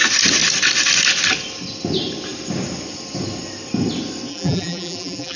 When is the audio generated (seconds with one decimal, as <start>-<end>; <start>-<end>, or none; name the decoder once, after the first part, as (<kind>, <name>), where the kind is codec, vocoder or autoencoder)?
4.3-5.4 (vocoder, BigVGAN v2)